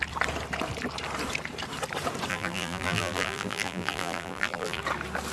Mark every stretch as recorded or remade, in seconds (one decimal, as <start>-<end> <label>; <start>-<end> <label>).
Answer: 0.0-2.3 recorded; 2.3-4.8 remade; 4.8-5.3 recorded